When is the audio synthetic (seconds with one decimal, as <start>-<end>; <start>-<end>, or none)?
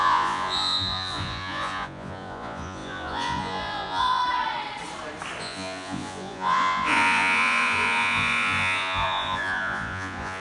0.0-4.2; 5.4-10.4